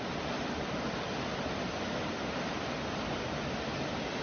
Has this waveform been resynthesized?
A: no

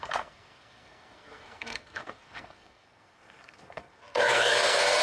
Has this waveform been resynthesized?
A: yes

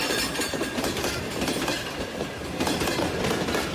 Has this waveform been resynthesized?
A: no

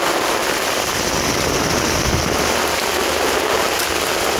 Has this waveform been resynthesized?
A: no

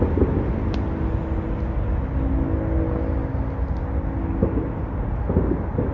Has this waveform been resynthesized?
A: no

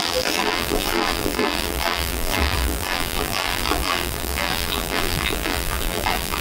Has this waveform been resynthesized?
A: yes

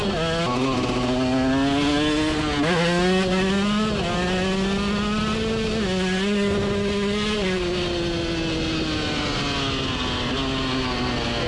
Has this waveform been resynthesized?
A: no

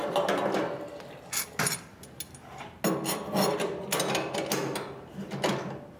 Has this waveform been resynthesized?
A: no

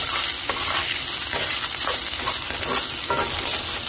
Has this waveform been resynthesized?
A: no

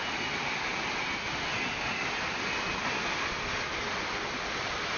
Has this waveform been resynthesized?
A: no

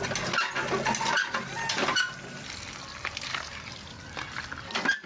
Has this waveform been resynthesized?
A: no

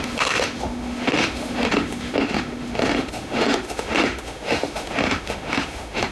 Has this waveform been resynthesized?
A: yes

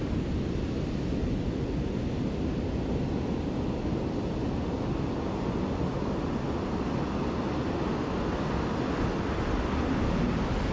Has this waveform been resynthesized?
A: no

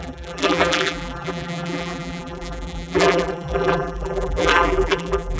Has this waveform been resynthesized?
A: yes